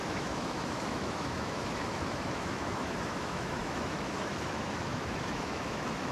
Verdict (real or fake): fake